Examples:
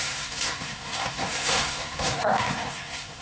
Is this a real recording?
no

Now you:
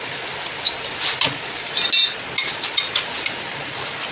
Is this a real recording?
yes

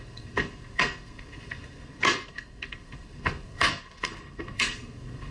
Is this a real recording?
no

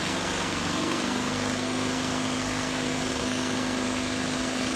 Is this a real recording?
no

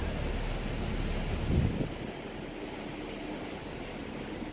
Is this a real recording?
yes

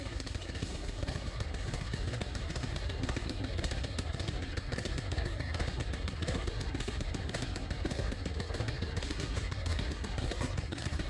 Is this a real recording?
no